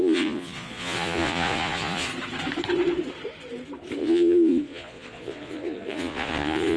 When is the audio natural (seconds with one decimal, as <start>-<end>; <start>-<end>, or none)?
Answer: 2.1-4.0